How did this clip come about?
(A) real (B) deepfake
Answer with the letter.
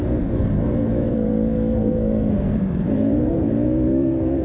B